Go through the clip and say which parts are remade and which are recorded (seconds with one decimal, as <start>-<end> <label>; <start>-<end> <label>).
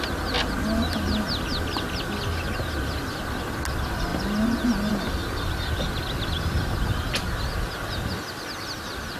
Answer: 0.0-9.2 recorded